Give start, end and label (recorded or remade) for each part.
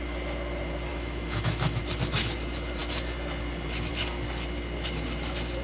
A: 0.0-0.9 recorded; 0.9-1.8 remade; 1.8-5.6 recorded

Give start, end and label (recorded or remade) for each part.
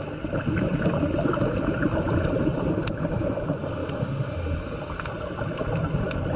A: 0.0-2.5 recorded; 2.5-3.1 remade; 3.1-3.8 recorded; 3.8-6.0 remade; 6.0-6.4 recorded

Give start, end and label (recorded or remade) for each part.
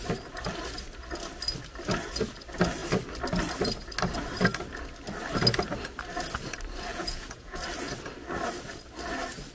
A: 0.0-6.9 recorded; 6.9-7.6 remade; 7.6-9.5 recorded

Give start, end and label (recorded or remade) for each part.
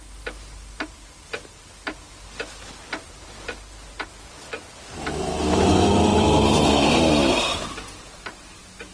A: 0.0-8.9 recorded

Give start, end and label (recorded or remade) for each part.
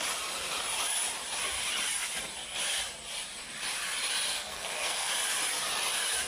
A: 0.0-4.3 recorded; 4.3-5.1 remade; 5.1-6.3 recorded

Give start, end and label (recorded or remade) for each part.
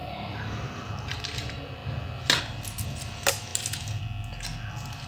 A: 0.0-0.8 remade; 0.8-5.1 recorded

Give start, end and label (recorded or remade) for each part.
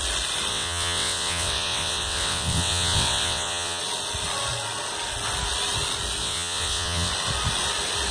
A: 0.0-0.5 recorded; 0.5-3.8 remade; 3.8-6.2 recorded; 6.2-7.1 remade; 7.1-8.1 recorded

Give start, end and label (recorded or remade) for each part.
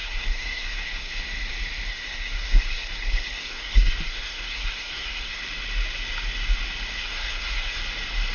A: 0.0-1.2 remade; 1.2-1.9 recorded; 1.9-5.4 remade; 5.4-7.0 recorded; 7.0-7.8 remade; 7.8-8.3 recorded